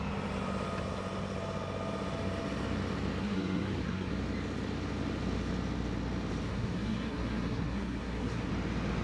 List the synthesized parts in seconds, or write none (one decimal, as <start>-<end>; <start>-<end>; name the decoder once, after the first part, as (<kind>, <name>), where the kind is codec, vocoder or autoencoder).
3.2-4.1 (codec, SNAC); 6.5-8.5